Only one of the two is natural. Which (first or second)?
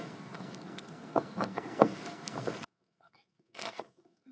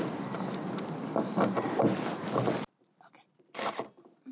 second